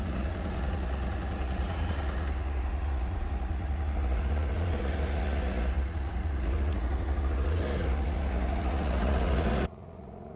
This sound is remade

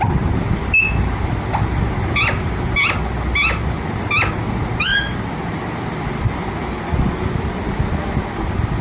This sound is recorded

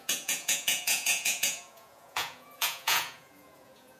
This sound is remade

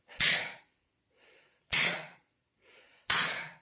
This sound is remade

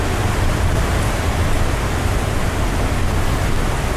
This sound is recorded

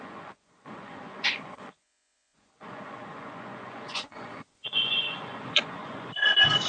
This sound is remade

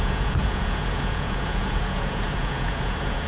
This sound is remade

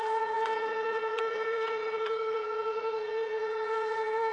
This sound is remade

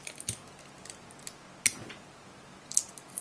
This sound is recorded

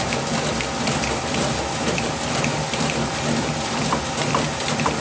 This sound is recorded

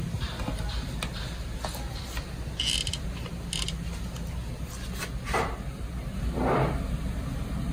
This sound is recorded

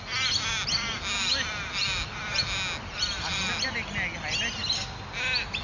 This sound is recorded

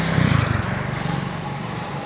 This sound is recorded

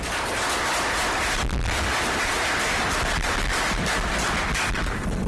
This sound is recorded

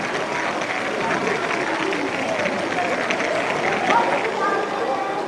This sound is recorded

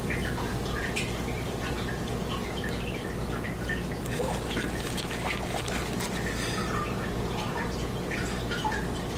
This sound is recorded